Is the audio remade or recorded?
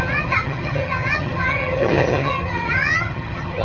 remade